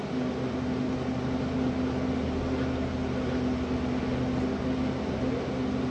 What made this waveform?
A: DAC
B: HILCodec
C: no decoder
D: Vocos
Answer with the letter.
C